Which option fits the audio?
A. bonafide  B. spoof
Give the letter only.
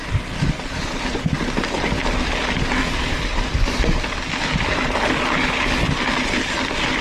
A